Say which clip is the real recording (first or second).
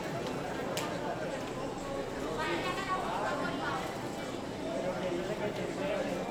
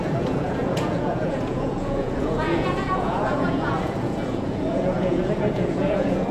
first